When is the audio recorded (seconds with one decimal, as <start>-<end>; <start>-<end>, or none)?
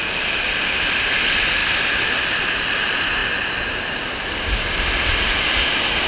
0.0-6.1